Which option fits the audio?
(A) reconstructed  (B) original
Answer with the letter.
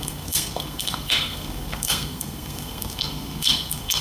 A